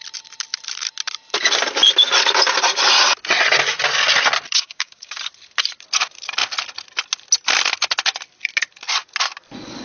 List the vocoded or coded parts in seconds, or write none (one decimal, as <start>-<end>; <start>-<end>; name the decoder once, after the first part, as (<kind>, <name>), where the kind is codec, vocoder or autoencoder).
4.5-5.1 (codec, DAC)